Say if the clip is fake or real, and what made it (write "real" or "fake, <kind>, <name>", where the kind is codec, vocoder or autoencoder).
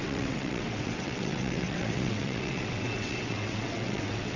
fake, vocoder, WaveNeXt